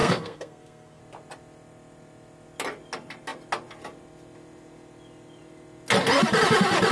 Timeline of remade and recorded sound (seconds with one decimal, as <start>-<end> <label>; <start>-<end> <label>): 0.0-1.0 remade; 1.0-6.9 recorded